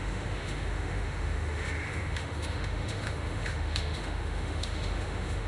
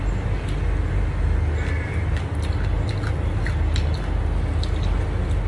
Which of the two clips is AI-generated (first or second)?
first